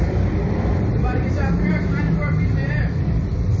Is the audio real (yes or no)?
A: no